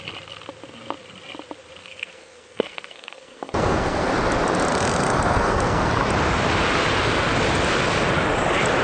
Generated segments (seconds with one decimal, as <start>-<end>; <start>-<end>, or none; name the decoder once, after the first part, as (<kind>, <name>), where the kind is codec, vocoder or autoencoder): 1.8-4.1 (codec, SNAC); 4.7-5.9